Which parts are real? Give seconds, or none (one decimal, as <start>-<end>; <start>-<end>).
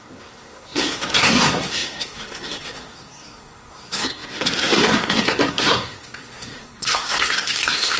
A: none